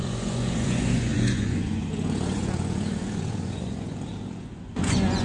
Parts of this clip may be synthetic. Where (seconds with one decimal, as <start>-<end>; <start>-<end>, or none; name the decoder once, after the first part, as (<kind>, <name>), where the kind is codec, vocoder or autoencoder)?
0.0-5.2 (vocoder, Vocos)